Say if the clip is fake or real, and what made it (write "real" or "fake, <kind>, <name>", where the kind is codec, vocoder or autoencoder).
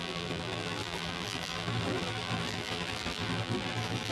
fake, vocoder, BigVGAN v2